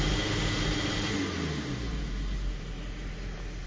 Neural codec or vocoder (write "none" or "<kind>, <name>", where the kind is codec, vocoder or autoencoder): none